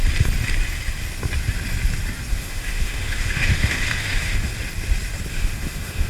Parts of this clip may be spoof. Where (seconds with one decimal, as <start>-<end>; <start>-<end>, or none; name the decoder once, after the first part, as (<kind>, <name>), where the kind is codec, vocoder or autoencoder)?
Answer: 2.3-4.5 (autoencoder, DAC-VAE); 5.3-6.1